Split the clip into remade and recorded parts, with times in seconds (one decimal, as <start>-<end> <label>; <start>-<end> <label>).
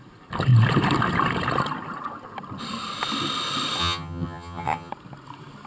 0.0-3.8 recorded; 3.8-4.9 remade; 4.9-5.7 recorded